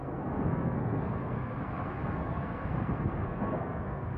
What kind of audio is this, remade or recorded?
remade